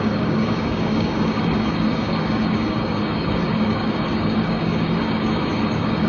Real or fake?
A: fake